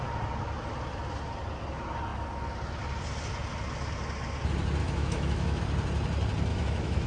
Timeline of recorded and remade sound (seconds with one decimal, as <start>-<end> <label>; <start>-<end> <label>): 0.0-4.8 recorded; 4.8-5.6 remade; 5.6-6.5 recorded; 6.5-7.1 remade